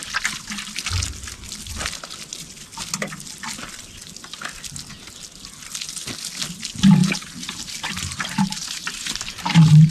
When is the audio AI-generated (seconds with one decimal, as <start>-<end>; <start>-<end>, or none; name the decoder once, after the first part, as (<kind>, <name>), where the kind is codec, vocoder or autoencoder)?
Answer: 7.0-9.9 (vocoder, BigVGAN v2)